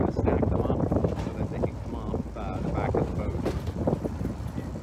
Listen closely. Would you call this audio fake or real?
real